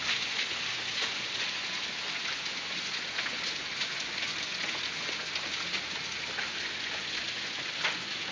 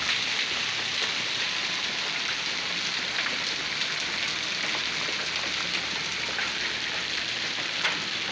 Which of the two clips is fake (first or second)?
first